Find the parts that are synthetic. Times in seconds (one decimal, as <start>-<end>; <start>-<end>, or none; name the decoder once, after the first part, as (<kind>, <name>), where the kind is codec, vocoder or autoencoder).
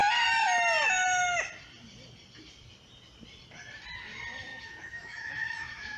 4.5-6.0 (autoencoder, DAC-VAE)